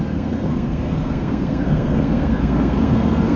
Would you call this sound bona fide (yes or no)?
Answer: no